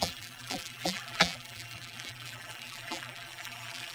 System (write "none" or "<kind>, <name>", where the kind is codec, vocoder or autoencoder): vocoder, BigVGAN v2